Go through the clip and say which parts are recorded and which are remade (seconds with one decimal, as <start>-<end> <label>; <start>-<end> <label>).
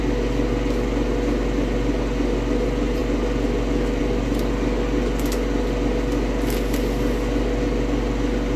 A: 0.0-8.6 recorded